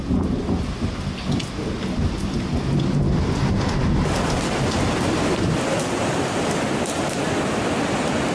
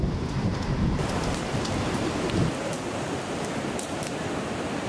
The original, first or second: first